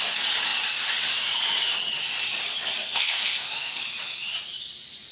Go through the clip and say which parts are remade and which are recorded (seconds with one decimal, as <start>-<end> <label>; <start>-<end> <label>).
0.0-2.8 recorded; 2.8-3.8 remade; 3.8-5.1 recorded